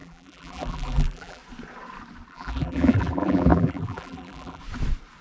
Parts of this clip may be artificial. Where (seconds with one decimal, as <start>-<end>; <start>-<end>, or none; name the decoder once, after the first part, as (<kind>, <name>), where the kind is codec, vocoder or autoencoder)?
0.0-1.4 (vocoder, BigVGAN v2); 2.3-4.6